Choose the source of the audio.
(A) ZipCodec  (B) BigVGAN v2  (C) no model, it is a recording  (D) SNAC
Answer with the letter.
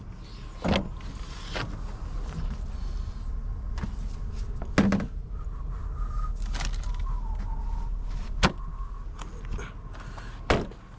C